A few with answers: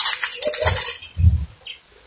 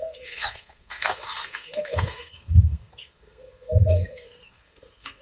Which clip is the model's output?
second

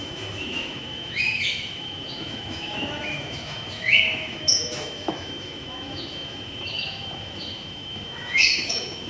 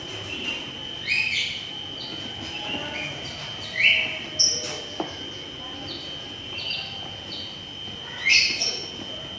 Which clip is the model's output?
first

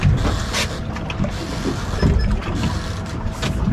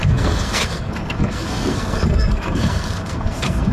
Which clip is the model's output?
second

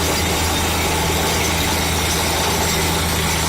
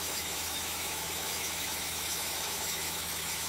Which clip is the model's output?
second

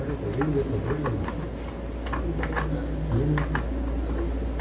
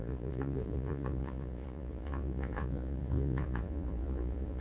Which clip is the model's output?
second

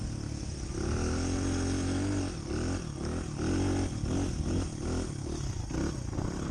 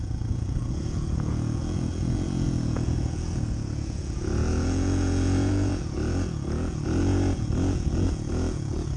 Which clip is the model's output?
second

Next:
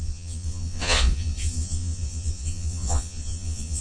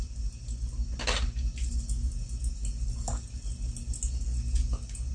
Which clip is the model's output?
first